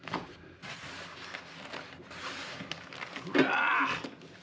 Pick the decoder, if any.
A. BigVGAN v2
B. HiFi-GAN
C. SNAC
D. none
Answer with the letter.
D